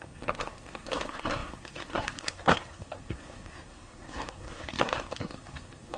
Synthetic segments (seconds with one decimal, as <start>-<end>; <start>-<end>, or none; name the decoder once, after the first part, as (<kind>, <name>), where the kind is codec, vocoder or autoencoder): 0.0-6.0 (codec, SNAC)